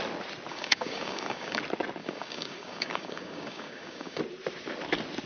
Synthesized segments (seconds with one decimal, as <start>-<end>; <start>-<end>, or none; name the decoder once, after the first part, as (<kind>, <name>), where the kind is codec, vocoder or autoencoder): 0.5-1.6 (codec, DAC); 2.0-4.2